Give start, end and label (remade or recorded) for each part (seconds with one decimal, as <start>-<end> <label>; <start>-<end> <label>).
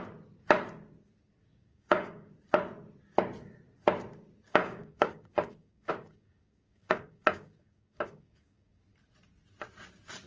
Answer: 0.0-1.5 recorded; 1.5-2.3 remade; 2.3-4.5 recorded; 4.5-8.8 remade; 8.8-10.3 recorded